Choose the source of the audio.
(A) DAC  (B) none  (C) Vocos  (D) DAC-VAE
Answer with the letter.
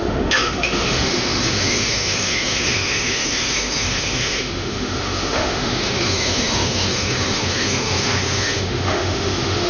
D